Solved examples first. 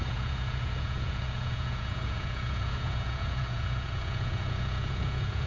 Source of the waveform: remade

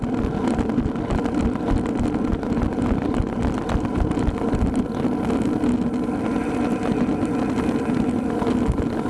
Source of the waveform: recorded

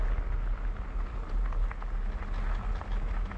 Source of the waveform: recorded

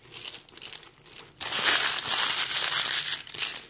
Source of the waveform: recorded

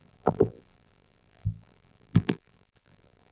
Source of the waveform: remade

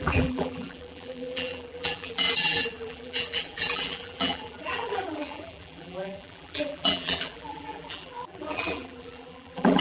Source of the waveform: remade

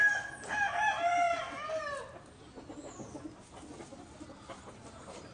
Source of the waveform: recorded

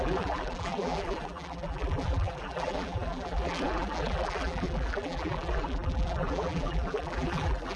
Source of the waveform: remade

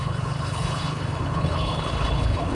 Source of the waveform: remade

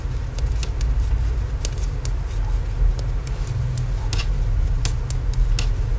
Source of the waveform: recorded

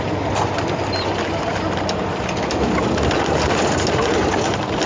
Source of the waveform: recorded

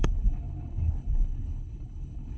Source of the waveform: remade